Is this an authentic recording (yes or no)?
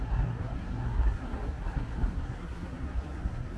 no